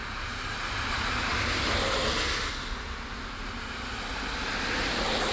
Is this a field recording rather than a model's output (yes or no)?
yes